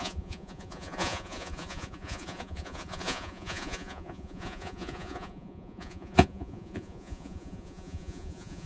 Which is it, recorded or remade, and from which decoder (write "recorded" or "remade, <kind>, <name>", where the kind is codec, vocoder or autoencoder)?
remade, vocoder, Vocos